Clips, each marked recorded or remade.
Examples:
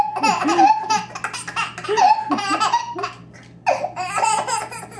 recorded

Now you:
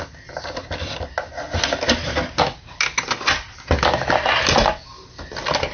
recorded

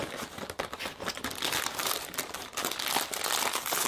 recorded